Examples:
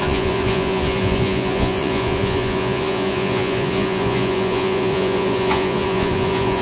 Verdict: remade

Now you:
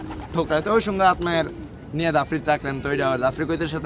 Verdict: recorded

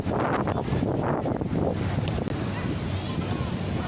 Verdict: recorded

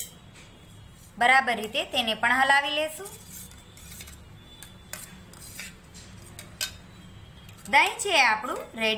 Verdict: recorded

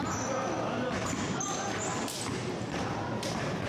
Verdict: recorded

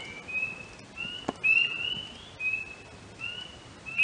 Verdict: recorded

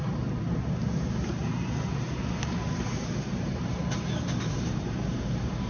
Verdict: remade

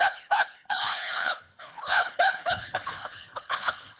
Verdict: remade